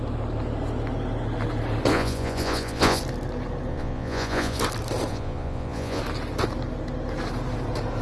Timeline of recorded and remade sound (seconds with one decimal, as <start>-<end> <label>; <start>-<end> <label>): 0.0-1.9 recorded; 1.9-3.0 remade; 3.0-3.7 recorded; 3.7-4.6 remade; 4.6-5.1 recorded; 5.1-6.0 remade; 6.0-8.0 recorded

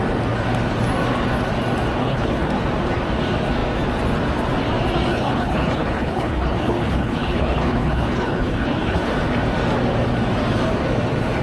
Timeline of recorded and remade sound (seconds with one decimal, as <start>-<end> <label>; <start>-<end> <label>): 0.0-2.0 recorded; 2.0-2.5 remade; 2.5-5.1 recorded; 5.1-9.1 remade; 9.1-11.4 recorded

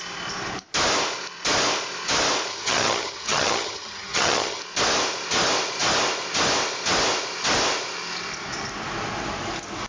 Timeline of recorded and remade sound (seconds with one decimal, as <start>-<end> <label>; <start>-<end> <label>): 0.0-2.5 recorded; 2.5-4.6 remade; 4.6-9.9 recorded

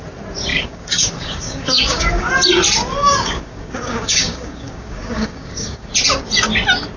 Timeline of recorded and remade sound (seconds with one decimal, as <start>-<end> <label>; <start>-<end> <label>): 0.0-0.5 recorded; 0.5-2.3 remade; 2.3-3.0 recorded; 3.0-5.9 remade; 5.9-7.0 recorded